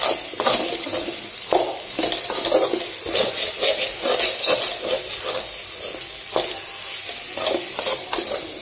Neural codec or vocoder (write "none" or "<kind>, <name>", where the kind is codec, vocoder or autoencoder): none